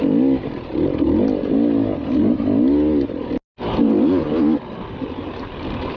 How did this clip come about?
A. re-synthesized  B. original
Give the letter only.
B